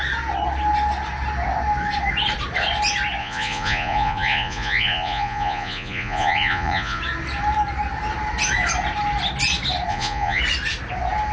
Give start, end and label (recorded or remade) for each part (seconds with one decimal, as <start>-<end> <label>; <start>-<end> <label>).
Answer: 0.0-3.2 recorded; 3.2-7.0 remade; 7.0-9.9 recorded; 9.9-10.4 remade; 10.4-11.3 recorded